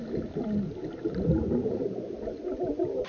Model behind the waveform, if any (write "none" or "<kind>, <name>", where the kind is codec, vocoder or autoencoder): none